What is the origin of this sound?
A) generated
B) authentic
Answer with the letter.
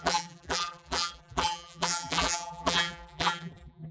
A